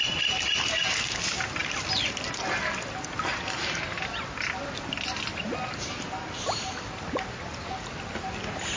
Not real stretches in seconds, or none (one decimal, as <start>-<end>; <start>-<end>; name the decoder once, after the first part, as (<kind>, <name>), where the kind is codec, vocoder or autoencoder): none